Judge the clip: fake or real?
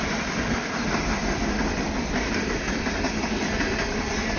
real